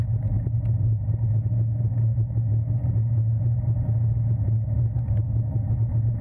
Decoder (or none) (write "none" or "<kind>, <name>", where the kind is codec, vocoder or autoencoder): none